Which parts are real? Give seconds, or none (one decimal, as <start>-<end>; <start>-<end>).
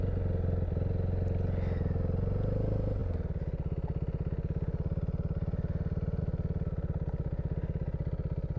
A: 0.0-8.6